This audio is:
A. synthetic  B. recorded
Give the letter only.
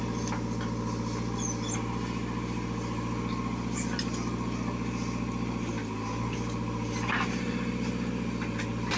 B